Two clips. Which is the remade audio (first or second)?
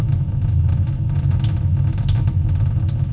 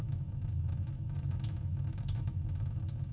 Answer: second